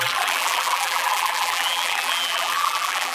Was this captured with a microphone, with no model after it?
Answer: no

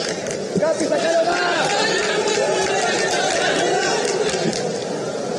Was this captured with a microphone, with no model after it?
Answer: yes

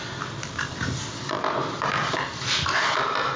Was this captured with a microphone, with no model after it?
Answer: yes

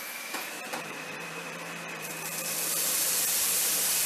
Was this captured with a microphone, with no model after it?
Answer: no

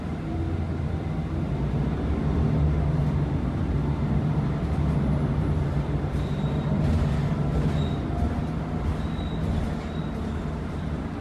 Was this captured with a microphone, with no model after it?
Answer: yes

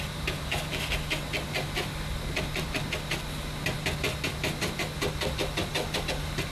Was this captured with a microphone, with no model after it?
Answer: yes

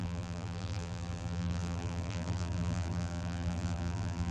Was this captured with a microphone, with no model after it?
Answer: no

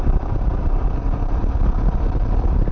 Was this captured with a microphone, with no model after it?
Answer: no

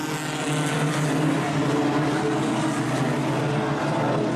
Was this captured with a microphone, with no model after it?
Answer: yes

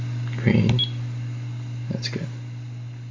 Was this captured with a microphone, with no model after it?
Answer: yes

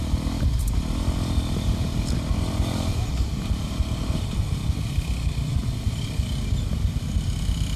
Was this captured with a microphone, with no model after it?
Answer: no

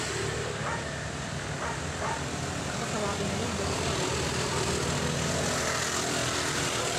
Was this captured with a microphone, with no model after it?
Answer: no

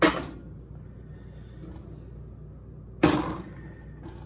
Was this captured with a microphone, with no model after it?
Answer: yes